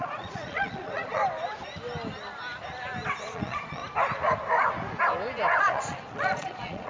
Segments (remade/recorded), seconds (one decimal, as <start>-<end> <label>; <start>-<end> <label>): 0.0-1.2 remade; 1.2-3.2 recorded; 3.2-3.8 remade; 3.8-5.6 recorded; 5.6-6.9 remade

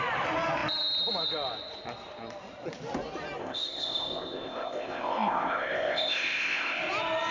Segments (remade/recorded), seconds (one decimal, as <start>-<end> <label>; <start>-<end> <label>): 0.0-3.4 recorded; 3.4-6.8 remade; 6.8-7.3 recorded

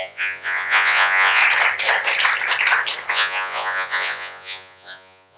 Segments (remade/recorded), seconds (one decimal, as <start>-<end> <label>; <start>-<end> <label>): 0.0-1.4 remade; 1.4-3.1 recorded; 3.1-5.4 remade